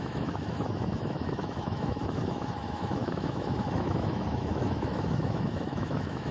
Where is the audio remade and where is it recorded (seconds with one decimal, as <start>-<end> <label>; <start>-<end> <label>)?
0.0-6.3 remade